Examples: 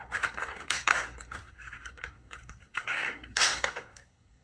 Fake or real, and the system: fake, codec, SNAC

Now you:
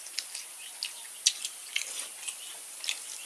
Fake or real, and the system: real